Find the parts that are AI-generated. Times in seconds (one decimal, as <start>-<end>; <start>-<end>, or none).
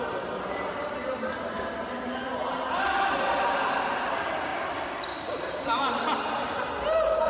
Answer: 4.5-5.9